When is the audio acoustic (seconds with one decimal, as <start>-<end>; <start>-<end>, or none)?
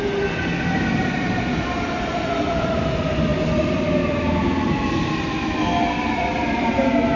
0.0-7.2